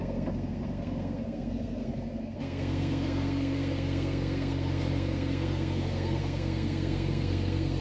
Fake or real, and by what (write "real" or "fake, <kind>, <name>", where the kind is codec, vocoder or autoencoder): fake, codec, SNAC